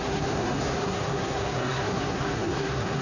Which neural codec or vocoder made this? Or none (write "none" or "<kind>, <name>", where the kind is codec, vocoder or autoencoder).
codec, SNAC